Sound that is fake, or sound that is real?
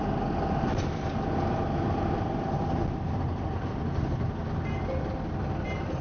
real